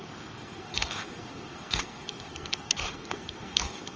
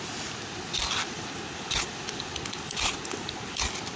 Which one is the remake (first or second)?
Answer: first